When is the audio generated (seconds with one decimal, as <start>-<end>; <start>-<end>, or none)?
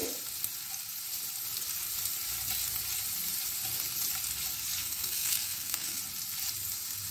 4.8-6.0